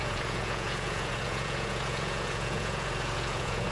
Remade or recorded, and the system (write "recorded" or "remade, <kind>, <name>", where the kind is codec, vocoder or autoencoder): remade, vocoder, Vocos